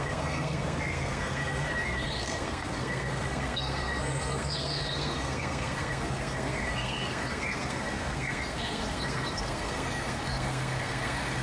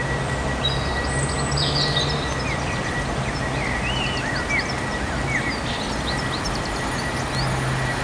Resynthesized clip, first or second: first